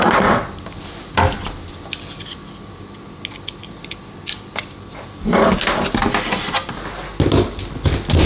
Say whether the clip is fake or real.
real